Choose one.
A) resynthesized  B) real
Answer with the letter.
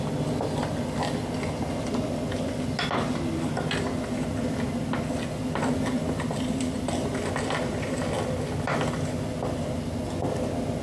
B